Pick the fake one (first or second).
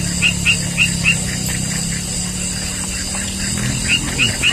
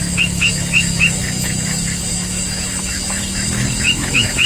second